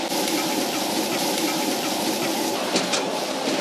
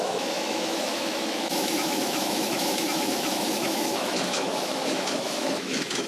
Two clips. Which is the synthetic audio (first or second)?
second